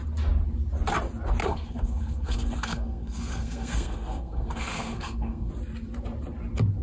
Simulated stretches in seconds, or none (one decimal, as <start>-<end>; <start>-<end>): 1.4-5.5